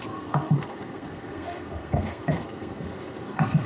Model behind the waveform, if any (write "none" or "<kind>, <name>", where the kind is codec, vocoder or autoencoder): codec, SNAC